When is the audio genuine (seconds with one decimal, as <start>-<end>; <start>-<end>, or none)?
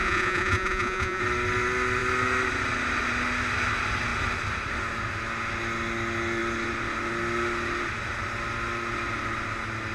1.2-9.9